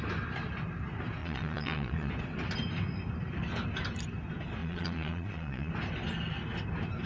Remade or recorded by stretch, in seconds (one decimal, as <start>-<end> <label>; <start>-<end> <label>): 0.0-1.2 recorded; 1.2-2.1 remade; 2.1-4.6 recorded; 4.6-5.7 remade; 5.7-7.1 recorded